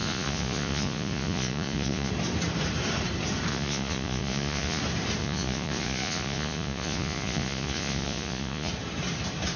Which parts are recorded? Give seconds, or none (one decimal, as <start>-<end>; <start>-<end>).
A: 2.1-3.5; 4.8-5.2; 8.7-9.6